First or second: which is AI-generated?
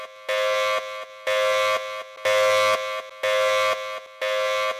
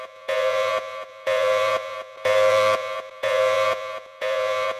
second